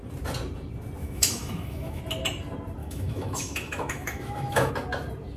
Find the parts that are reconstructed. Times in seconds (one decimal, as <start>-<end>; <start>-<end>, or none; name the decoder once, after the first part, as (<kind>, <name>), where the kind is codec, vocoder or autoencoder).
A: 1.0-2.0 (autoencoder, DAC-VAE); 2.8-4.7